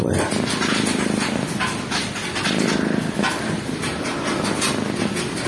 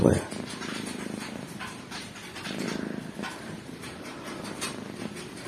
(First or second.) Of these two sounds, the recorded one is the first